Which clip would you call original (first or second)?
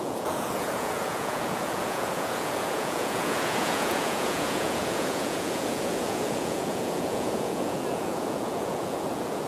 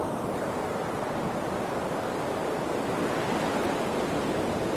second